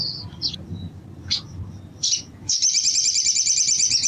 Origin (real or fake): fake